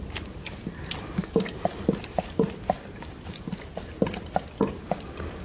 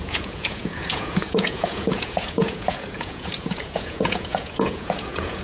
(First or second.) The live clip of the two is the first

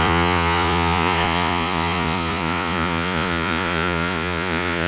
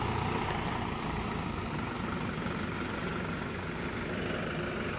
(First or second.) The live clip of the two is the second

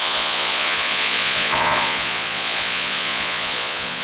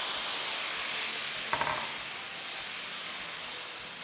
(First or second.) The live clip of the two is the second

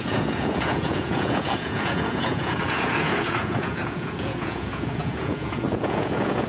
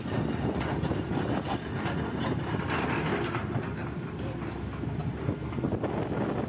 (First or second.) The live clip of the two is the second